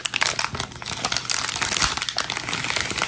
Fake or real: real